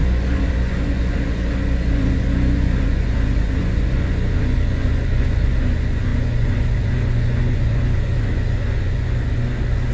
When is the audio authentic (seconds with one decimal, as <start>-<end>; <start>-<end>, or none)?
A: none